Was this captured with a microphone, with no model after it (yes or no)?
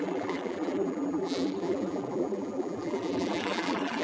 no